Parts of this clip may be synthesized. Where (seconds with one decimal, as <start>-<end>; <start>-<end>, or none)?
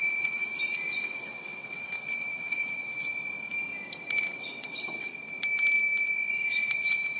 0.0-3.1; 4.0-5.1; 6.3-7.2